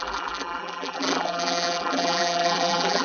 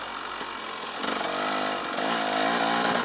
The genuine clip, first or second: second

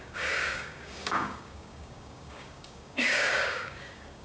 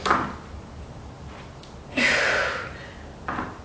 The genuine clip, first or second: second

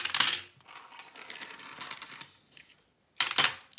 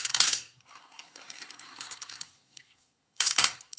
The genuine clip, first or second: first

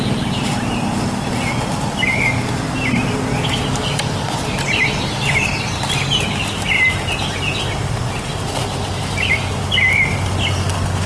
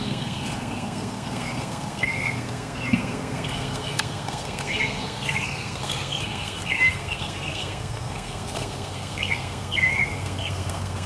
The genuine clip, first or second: first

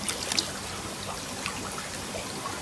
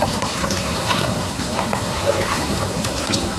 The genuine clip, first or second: first